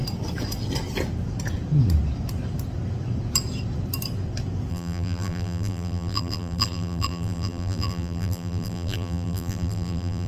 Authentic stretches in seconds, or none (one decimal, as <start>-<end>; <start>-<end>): 0.0-4.7